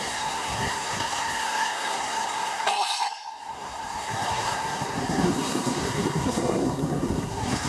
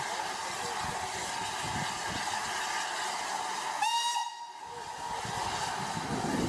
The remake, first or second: first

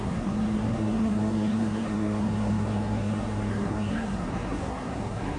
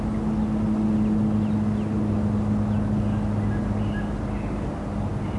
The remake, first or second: first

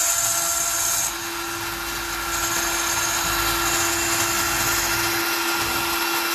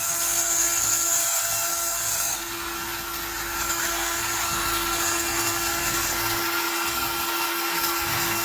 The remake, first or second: second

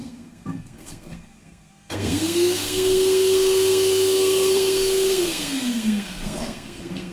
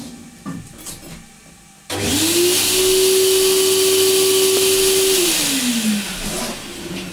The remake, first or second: first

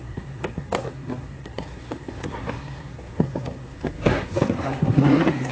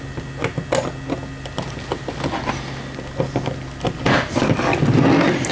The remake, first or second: first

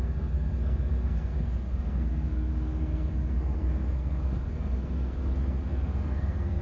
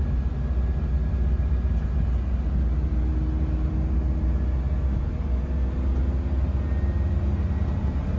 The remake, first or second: first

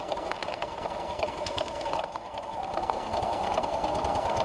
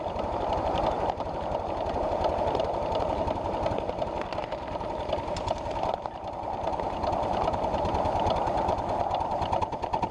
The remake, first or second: first